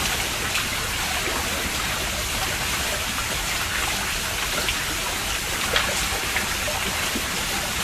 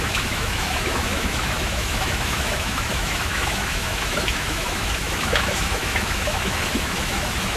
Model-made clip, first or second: second